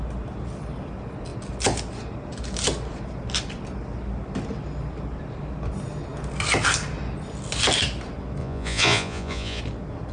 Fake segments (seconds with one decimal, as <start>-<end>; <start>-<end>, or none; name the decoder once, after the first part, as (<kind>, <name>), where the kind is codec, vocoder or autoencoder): 8.4-9.6 (vocoder, Vocos)